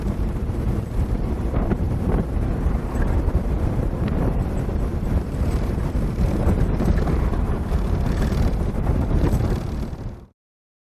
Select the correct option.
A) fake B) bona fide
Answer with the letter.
A